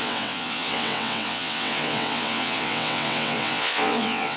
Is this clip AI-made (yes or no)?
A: yes